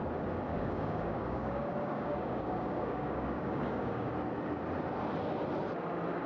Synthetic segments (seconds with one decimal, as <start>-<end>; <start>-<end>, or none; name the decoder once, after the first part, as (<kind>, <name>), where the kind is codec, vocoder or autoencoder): 0.5-4.1 (codec, DAC)